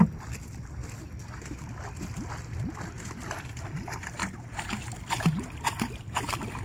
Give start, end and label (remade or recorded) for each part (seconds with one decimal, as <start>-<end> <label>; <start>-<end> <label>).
0.0-4.2 recorded; 4.2-5.9 remade; 5.9-6.6 recorded